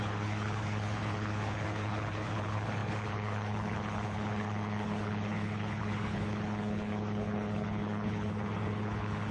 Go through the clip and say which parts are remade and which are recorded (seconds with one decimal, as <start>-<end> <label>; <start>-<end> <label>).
0.0-9.3 remade